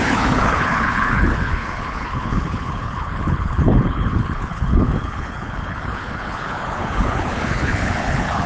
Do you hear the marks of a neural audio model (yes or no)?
yes